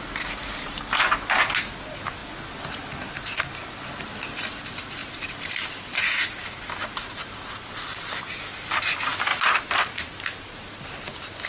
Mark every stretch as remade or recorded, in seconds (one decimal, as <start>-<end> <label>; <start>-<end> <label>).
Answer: 0.0-5.0 recorded; 5.0-6.5 remade; 6.5-9.3 recorded; 9.3-10.2 remade; 10.2-11.5 recorded